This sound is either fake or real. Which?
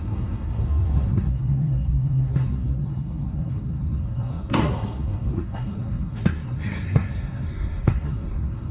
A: fake